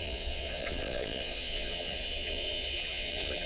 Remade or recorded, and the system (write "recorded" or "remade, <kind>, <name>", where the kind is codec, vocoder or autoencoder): remade, vocoder, Vocos